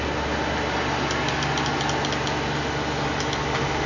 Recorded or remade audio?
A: recorded